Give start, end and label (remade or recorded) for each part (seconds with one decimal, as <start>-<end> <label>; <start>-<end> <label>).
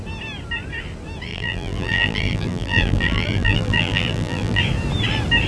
0.0-1.3 recorded; 1.3-4.6 remade; 4.6-5.5 recorded